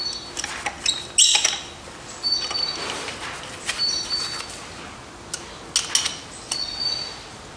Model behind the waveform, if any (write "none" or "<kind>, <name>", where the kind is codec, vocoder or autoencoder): none